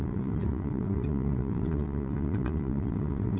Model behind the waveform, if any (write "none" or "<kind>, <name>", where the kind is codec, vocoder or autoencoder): vocoder, WaveNeXt